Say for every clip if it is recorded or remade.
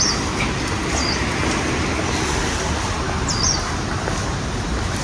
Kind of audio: recorded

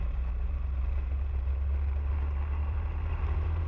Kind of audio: recorded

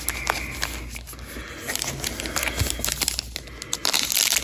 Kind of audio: recorded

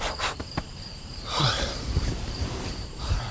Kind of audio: remade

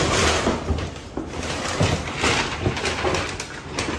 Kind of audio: recorded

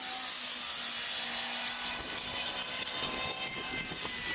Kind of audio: recorded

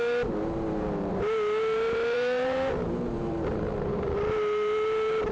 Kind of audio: remade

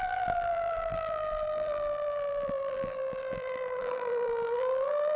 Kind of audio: remade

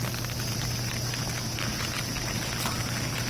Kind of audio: recorded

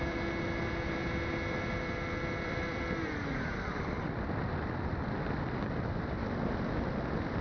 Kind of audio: remade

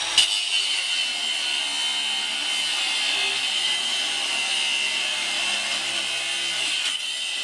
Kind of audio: recorded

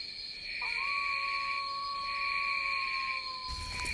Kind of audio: recorded